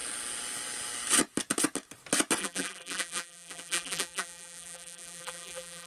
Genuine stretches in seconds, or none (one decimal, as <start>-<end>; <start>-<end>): 0.0-2.4